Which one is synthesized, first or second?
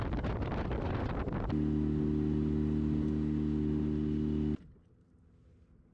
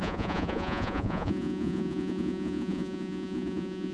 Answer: second